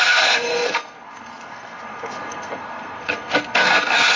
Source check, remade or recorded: remade